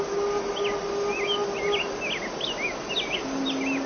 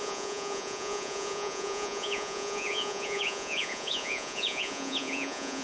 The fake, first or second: second